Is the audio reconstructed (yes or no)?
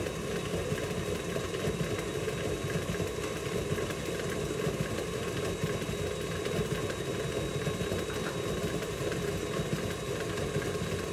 no